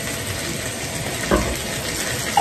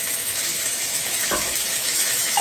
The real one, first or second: first